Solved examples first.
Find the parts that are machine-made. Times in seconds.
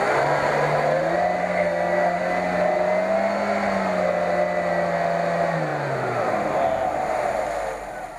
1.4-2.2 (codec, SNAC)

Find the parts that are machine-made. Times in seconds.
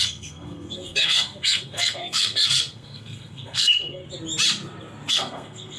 0.0-4.0 (codec, SNAC); 5.1-5.8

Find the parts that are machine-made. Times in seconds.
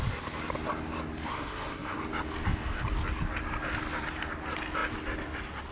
1.3-2.0 (codec, SNAC)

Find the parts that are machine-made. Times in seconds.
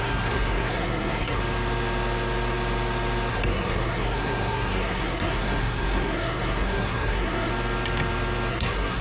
0.0-1.4 (codec, SNAC); 3.3-7.5; 8.5-9.0